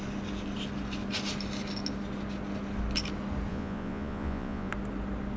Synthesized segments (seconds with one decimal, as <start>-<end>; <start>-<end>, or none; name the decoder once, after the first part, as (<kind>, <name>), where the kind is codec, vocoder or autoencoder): 3.5-4.7 (vocoder, Vocos)